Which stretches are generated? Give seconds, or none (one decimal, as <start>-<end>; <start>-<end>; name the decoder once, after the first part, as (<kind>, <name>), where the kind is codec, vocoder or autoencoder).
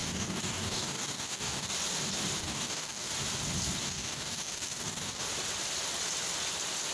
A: 0.0-1.7 (codec, DAC); 2.4-3.1; 3.8-5.2